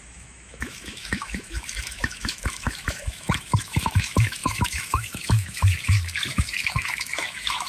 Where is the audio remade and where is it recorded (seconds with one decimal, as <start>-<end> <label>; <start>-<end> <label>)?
0.0-7.7 remade